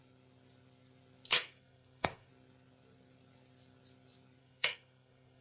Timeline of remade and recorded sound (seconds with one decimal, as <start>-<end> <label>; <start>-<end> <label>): 0.0-1.3 recorded; 1.3-2.3 remade; 2.3-4.4 recorded; 4.4-5.4 remade

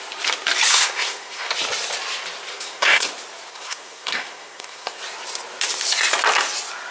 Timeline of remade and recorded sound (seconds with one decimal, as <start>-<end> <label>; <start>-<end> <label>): 0.0-0.7 recorded; 0.7-1.5 remade; 1.5-2.5 recorded; 2.5-3.1 remade; 3.1-3.5 recorded; 3.5-5.0 remade; 5.0-6.9 recorded

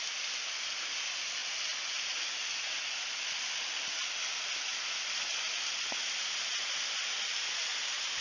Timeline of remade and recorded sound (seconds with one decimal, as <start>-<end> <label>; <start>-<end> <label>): 0.0-8.2 recorded

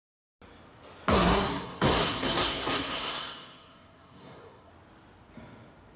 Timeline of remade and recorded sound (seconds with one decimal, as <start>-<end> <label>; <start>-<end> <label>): 0.0-1.1 recorded; 1.1-4.7 remade; 4.7-6.0 recorded

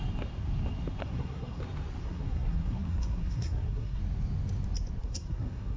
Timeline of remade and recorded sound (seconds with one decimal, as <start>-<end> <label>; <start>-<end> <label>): 0.0-1.0 recorded; 1.0-1.6 remade; 1.6-2.0 recorded; 2.0-4.0 remade; 4.0-5.0 recorded; 5.0-5.8 remade

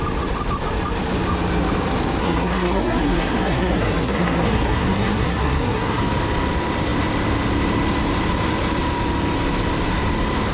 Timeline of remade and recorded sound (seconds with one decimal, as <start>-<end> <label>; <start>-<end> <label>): 0.0-2.2 recorded; 2.2-6.0 remade; 6.0-10.5 recorded

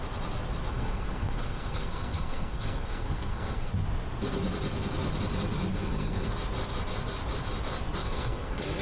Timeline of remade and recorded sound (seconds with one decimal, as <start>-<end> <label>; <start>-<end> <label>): 0.0-0.7 recorded; 0.7-3.7 remade; 3.7-5.7 recorded; 5.7-6.3 remade; 6.3-8.0 recorded; 8.0-8.8 remade